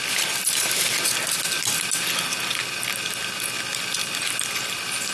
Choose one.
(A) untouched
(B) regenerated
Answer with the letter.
A